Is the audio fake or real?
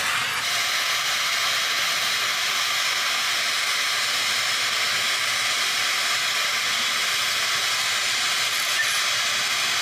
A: real